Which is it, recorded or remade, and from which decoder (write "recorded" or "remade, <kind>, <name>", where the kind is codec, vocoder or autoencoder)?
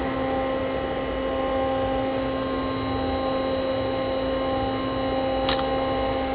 recorded